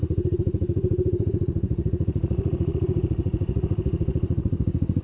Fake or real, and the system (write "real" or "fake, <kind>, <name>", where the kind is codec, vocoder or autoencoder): fake, vocoder, Vocos